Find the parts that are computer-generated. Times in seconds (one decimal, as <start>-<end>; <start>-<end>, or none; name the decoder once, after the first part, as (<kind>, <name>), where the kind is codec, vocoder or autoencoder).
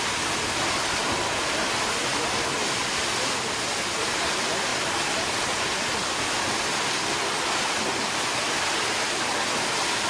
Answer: none